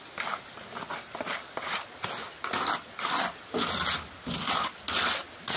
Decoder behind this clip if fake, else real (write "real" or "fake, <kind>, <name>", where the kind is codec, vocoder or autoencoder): real